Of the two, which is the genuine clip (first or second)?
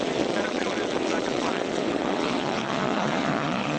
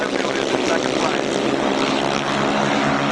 second